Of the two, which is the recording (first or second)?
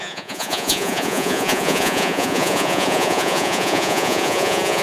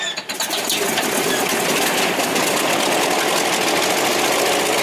second